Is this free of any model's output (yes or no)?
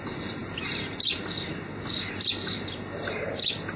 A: yes